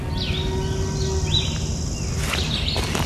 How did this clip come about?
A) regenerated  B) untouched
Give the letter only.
B